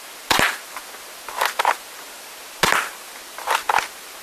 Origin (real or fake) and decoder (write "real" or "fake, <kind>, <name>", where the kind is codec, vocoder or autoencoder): real